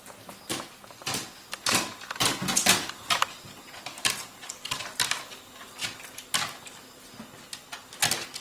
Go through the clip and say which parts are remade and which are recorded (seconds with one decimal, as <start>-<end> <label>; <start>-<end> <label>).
0.0-8.4 recorded